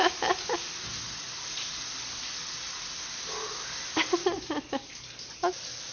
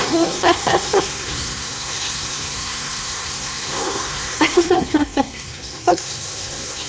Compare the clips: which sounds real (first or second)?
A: first